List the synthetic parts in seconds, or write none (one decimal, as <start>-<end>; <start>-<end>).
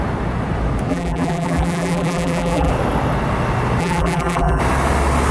0.9-2.7; 3.8-4.6